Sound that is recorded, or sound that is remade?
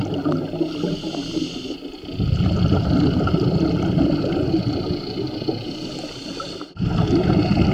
recorded